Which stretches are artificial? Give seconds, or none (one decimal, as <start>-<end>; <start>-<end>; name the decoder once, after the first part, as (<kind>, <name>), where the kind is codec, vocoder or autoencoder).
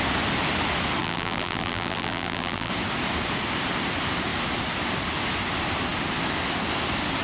1.0-2.7 (vocoder, BigVGAN v2)